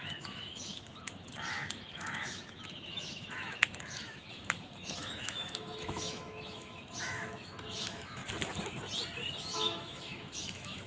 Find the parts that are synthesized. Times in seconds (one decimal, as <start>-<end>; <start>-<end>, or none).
0.0-8.2; 9.4-10.9